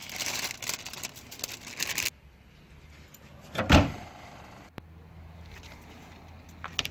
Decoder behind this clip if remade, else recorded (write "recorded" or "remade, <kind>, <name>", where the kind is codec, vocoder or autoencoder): recorded